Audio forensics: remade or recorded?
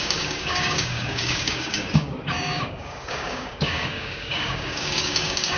remade